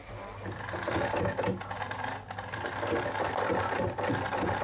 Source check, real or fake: real